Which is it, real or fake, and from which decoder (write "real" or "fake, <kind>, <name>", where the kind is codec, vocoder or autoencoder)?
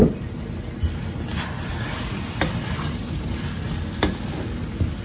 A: real